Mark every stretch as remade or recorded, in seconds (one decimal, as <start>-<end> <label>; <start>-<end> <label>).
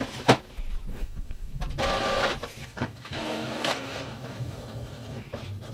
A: 0.0-0.9 recorded; 0.9-1.6 remade; 1.6-2.6 recorded; 2.6-5.3 remade; 5.3-5.7 recorded